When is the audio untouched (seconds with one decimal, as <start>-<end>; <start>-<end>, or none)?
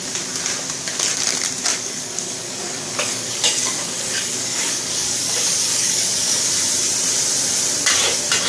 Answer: 0.0-1.7; 6.5-8.5